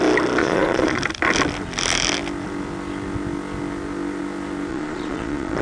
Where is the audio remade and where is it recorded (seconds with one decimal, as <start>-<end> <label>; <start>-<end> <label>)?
0.0-0.4 recorded; 0.4-1.0 remade; 1.0-4.7 recorded; 4.7-5.6 remade